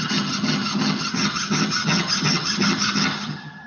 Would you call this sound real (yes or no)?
no